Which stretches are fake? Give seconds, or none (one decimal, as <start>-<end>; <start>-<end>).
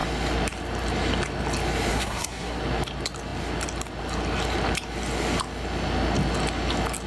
1.9-2.6